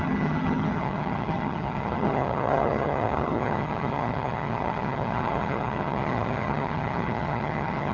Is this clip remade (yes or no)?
yes